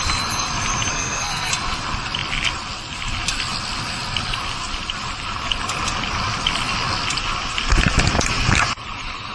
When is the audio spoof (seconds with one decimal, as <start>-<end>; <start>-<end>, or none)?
0.9-1.5